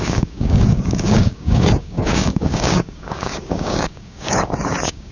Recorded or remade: remade